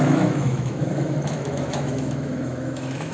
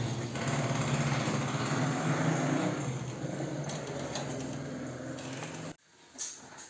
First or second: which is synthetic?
first